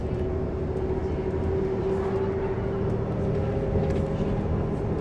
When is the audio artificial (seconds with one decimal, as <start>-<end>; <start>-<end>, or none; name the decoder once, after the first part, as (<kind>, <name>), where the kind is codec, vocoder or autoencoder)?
none